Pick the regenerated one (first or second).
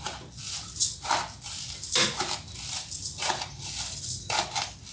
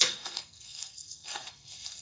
second